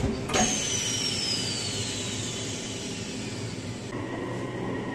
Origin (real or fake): real